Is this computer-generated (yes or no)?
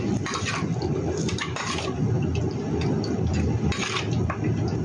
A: no